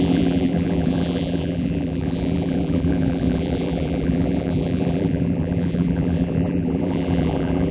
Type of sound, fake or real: fake